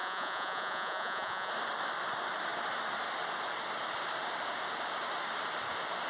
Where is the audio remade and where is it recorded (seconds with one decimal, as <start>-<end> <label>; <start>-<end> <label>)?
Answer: 0.0-1.5 remade; 1.5-6.1 recorded